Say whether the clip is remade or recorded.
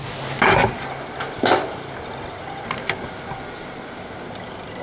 recorded